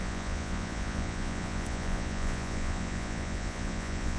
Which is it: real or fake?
fake